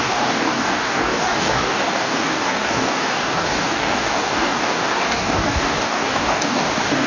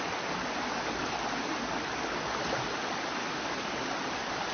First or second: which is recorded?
second